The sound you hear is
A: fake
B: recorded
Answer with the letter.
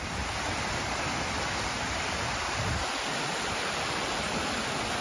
B